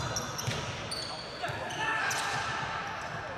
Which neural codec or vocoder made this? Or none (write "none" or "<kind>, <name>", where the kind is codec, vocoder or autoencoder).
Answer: none